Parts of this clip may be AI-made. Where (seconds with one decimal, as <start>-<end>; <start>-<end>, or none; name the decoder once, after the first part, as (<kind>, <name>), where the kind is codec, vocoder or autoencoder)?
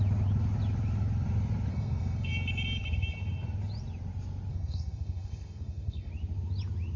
1.7-2.3 (codec, SNAC); 4.5-6.1